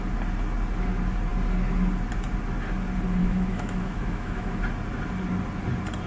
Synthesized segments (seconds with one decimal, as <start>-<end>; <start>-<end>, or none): 3.2-4.6